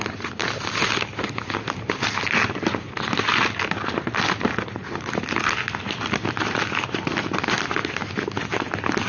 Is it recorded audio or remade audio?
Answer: recorded